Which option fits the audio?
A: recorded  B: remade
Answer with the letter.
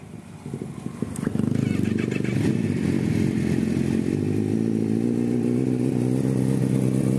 A